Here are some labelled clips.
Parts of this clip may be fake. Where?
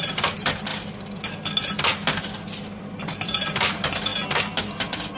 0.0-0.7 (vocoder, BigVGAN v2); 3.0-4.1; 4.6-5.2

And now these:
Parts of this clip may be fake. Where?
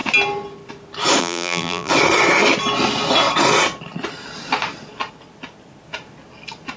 1.2-1.9 (vocoder, BigVGAN v2)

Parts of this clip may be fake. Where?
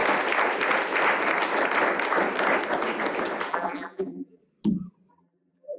3.5-4.4 (vocoder, BigVGAN v2); 5.1-5.8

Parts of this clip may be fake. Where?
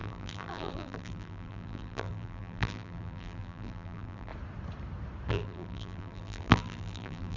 0.0-4.3 (vocoder, BigVGAN v2); 5.3-7.4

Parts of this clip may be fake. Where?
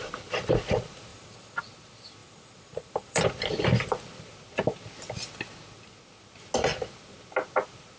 1.1-1.6 (vocoder, BigVGAN v2); 2.2-3.2